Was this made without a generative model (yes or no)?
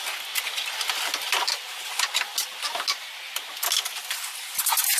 yes